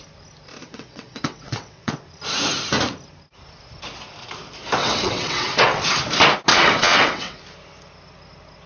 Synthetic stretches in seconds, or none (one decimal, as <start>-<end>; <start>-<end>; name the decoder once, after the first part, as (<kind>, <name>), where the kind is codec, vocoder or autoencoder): 0.6-1.9 (vocoder, WaveNeXt); 4.8-5.8; 6.5-7.4